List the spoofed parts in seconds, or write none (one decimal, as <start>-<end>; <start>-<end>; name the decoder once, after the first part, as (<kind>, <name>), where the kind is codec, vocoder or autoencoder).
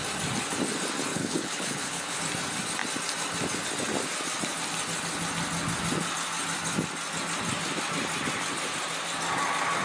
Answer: 1.1-2.2 (codec, HILCodec)